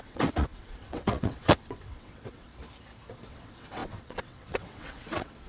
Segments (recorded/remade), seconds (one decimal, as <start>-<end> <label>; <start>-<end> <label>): 0.0-2.5 remade; 2.5-3.3 recorded; 3.3-5.5 remade